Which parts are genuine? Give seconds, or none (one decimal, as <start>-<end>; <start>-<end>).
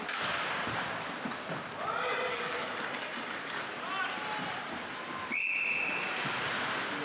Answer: 0.0-2.3; 3.6-7.0